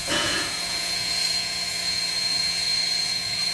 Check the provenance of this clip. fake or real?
fake